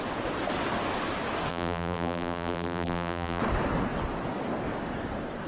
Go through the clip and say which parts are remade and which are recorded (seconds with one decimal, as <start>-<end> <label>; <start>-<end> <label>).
0.0-1.5 recorded; 1.5-3.4 remade; 3.4-5.5 recorded

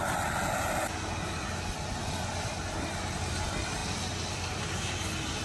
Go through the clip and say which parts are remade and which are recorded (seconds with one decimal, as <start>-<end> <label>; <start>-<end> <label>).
0.0-5.4 recorded

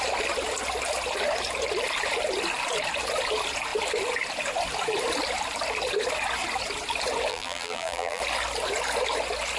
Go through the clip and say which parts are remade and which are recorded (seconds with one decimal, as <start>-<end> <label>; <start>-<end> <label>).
0.0-7.3 recorded; 7.3-8.2 remade; 8.2-9.6 recorded

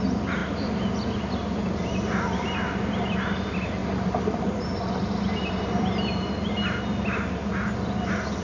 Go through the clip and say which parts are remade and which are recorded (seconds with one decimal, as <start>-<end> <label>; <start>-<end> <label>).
0.0-8.4 recorded

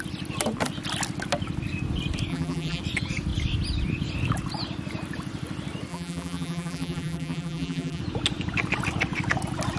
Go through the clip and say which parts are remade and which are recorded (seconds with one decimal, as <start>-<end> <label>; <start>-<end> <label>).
0.0-2.3 recorded; 2.3-2.8 remade; 2.8-5.9 recorded; 5.9-8.0 remade; 8.0-9.8 recorded